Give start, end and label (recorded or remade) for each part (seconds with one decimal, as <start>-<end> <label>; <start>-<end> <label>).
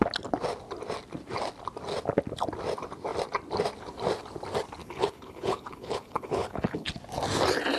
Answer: 0.0-4.8 recorded; 4.8-6.9 remade; 6.9-7.8 recorded